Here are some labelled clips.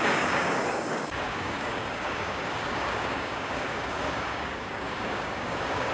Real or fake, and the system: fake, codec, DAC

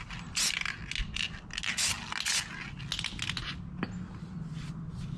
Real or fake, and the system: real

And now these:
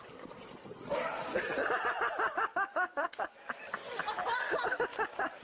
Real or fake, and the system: real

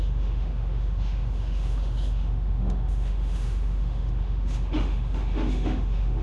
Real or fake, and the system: fake, autoencoder, DAC-VAE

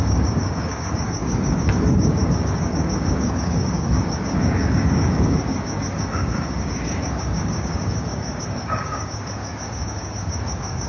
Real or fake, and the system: fake, codec, DAC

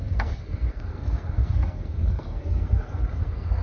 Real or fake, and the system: fake, codec, SNAC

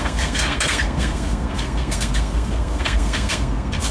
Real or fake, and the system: fake, codec, SNAC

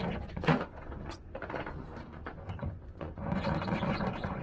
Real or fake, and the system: fake, vocoder, Vocos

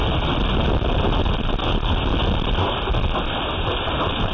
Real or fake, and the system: real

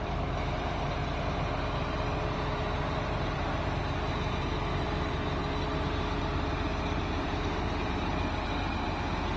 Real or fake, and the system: fake, vocoder, BigVGAN v2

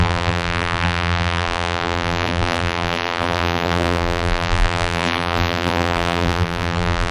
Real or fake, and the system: fake, vocoder, BigVGAN v2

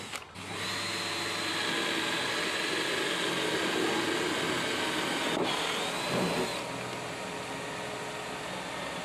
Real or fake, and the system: real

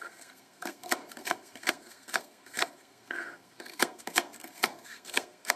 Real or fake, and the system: fake, codec, SNAC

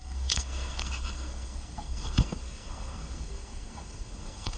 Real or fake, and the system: fake, codec, SNAC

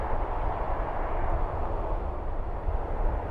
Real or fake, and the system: real